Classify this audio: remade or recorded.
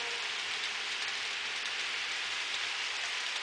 recorded